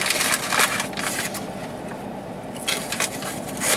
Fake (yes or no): no